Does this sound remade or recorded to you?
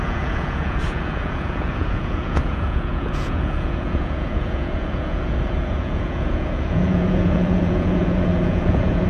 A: remade